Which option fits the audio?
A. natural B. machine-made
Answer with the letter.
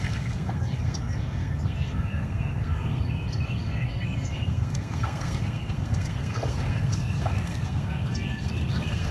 B